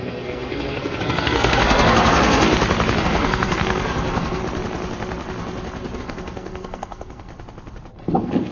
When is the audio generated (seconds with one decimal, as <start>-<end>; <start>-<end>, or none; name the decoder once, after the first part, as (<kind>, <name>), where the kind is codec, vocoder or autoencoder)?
0.0-2.5 (codec, SNAC); 3.0-4.4; 6.0-7.3; 7.9-8.5